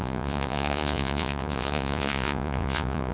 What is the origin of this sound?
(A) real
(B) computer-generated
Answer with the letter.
B